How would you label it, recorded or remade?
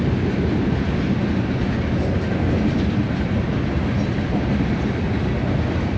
recorded